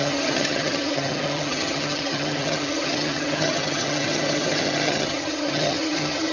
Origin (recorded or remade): remade